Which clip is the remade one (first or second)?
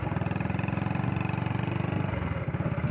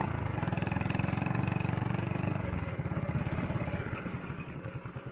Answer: second